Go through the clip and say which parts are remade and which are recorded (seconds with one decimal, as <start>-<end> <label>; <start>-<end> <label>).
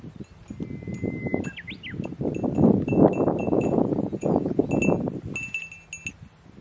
0.0-3.4 recorded; 3.4-4.6 remade; 4.6-6.6 recorded